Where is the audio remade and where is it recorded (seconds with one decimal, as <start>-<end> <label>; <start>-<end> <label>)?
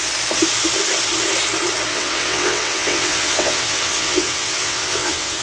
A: 0.0-1.9 recorded; 1.9-5.4 remade